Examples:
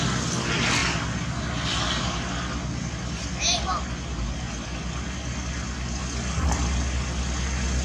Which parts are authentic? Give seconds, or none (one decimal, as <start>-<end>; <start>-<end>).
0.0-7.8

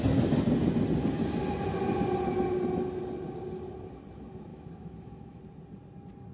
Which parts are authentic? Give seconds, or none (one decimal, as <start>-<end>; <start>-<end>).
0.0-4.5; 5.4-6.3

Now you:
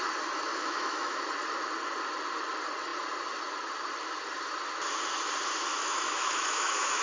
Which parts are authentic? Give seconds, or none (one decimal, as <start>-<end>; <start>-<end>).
0.0-0.5; 1.2-5.7